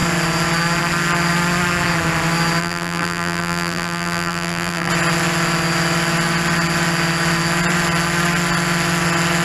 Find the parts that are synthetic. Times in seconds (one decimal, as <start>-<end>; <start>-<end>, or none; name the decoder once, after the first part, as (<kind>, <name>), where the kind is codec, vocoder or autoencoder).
2.6-4.9 (vocoder, BigVGAN v2)